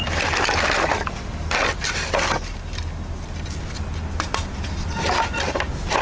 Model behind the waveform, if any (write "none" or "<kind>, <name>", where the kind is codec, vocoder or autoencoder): none